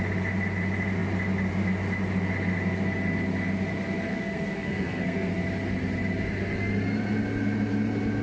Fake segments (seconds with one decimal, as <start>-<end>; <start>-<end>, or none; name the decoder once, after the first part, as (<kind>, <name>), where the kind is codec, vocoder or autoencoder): 4.1-5.3 (codec, SNAC)